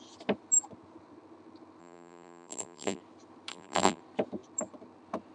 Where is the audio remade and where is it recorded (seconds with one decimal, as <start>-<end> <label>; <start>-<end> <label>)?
0.0-1.8 recorded; 1.8-3.0 remade; 3.0-3.5 recorded; 3.5-4.0 remade; 4.0-5.3 recorded